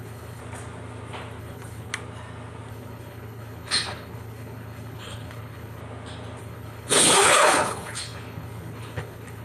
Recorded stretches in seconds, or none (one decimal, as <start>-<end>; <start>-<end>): 0.4-1.4; 1.9-2.7; 5.8-6.4